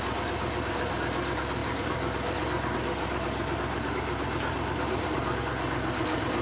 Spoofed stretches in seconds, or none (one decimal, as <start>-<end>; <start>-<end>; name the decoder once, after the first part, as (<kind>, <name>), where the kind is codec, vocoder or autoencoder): none